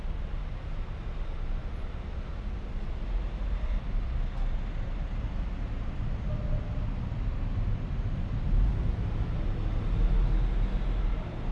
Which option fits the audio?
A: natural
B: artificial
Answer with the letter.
A